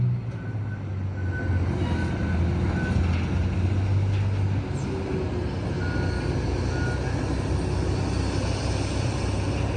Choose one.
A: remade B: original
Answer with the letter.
B